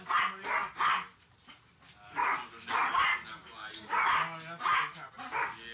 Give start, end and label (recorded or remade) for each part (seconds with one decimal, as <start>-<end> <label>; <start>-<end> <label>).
0.0-5.7 recorded